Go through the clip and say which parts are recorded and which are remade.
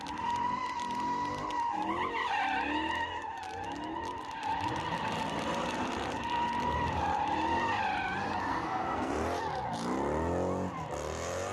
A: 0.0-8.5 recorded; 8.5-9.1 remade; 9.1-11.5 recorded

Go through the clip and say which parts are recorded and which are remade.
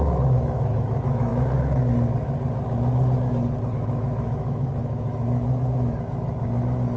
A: 0.0-1.3 remade; 1.3-3.7 recorded; 3.7-7.0 remade